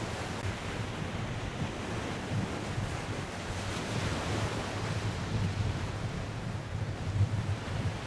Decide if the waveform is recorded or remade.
recorded